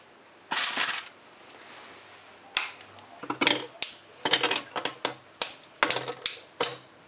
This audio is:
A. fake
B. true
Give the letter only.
B